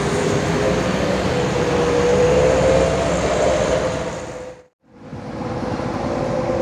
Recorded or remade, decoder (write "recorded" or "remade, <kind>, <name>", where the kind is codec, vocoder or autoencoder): recorded